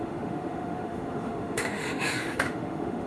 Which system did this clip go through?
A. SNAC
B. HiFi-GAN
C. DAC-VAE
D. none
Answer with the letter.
C